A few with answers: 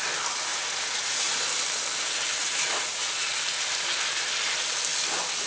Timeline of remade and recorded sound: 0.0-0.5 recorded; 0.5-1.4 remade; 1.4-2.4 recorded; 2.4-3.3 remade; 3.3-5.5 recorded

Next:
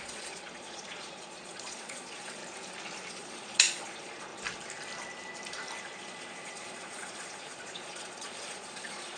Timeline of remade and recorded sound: 0.0-2.4 remade; 2.4-3.1 recorded; 3.1-4.3 remade; 4.3-5.8 recorded; 5.8-9.2 remade

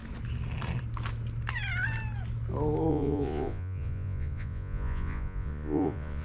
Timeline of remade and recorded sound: 0.0-2.9 recorded; 2.9-6.2 remade

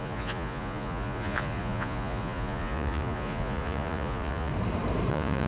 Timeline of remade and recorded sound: 0.0-4.5 remade; 4.5-5.1 recorded; 5.1-5.5 remade

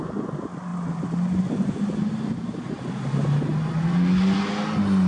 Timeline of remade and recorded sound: 0.0-5.1 recorded

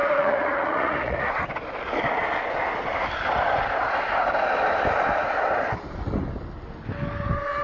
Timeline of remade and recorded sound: 0.0-1.3 remade; 1.3-7.6 recorded

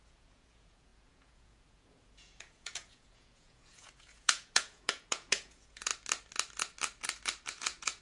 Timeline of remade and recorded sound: 0.0-5.9 remade; 5.9-7.5 recorded; 7.5-8.0 remade